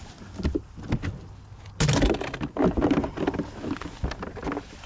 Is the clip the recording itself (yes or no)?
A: yes